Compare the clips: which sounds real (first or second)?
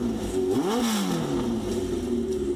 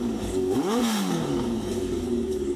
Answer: first